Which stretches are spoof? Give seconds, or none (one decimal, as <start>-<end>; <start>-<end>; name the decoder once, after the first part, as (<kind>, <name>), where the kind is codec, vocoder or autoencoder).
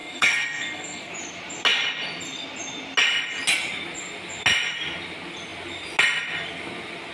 0.0-1.1 (codec, SNAC)